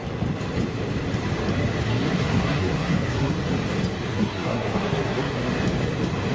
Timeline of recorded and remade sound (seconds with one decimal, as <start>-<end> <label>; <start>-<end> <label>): 0.0-1.9 recorded; 1.9-3.3 remade; 3.3-4.1 recorded; 4.1-5.5 remade; 5.5-6.3 recorded

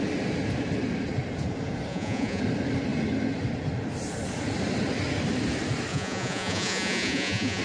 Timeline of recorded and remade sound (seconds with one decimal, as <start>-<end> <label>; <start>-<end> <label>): 0.0-1.9 recorded; 1.9-2.4 remade; 2.4-5.9 recorded; 5.9-7.6 remade

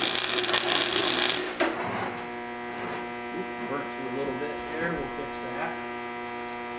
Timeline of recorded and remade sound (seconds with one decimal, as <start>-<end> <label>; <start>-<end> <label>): 0.0-6.8 recorded

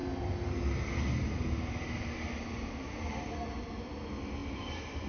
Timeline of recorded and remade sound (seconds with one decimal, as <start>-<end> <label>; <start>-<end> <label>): 0.0-5.1 recorded

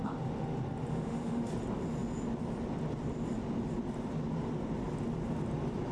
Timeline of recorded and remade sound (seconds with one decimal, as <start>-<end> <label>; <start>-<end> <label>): 0.0-0.9 recorded; 0.9-1.5 remade; 1.5-5.9 recorded